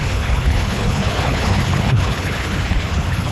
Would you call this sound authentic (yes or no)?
no